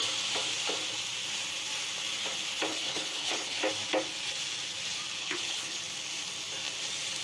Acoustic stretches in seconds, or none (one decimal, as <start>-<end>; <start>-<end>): 0.0-2.7; 3.6-5.2; 5.8-7.2